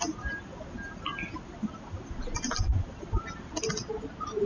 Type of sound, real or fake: real